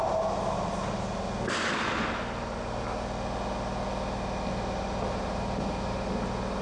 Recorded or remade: recorded